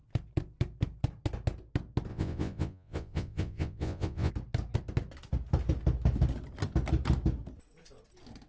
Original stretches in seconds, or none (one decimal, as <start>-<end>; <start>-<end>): 0.0-2.1; 4.3-8.5

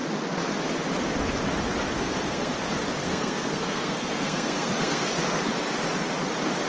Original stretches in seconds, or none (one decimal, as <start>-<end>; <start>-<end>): 0.0-2.0; 2.5-3.0; 5.5-6.7

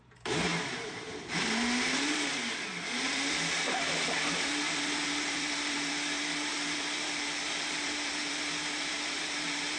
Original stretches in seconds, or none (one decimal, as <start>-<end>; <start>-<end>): none

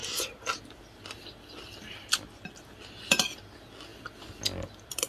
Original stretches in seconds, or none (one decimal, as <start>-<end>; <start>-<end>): 0.0-5.1

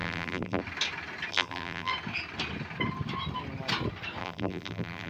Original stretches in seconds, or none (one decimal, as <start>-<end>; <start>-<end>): 0.6-1.3; 1.9-4.2